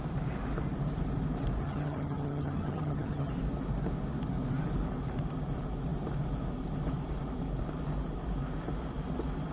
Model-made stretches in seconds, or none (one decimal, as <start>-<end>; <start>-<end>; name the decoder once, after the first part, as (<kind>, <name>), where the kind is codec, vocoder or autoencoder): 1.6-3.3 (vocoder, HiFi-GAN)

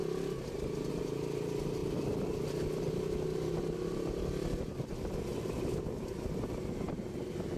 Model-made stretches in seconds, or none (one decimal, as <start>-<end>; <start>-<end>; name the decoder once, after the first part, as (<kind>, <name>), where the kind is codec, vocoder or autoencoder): none

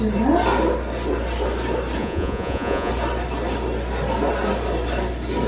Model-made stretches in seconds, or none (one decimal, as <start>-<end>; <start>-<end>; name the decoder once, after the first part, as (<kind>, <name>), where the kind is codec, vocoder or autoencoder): 2.0-2.9 (vocoder, Vocos)

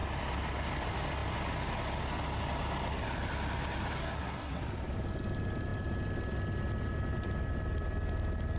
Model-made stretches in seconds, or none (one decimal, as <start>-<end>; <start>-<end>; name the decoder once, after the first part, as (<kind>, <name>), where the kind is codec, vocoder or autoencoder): 4.0-4.6 (codec, SNAC)

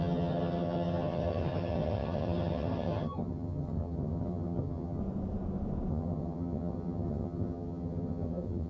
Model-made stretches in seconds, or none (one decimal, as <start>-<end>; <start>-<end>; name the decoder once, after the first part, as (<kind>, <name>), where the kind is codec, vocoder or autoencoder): 0.0-5.0 (vocoder, HiFi-GAN); 5.9-8.7

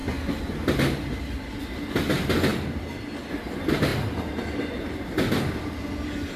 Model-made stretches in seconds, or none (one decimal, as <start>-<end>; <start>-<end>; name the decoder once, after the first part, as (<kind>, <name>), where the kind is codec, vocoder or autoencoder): none

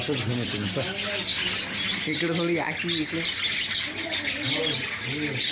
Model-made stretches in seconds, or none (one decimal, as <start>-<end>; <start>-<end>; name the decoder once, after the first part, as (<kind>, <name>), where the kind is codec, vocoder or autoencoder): none

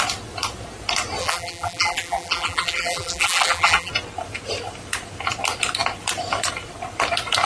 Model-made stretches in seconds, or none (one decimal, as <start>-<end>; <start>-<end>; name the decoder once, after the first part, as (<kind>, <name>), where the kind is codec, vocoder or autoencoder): 1.2-3.9 (vocoder, BigVGAN v2)